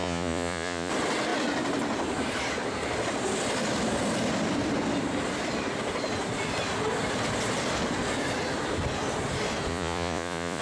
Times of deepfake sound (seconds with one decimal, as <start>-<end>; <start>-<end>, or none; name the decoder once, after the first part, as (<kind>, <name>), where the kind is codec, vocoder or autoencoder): 0.0-0.9 (vocoder, Vocos); 9.7-10.6